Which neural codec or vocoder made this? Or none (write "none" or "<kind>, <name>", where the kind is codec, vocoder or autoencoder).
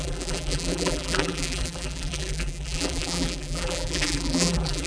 vocoder, BigVGAN v2